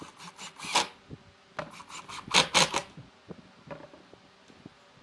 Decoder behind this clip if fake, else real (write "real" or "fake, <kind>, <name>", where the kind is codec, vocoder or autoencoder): real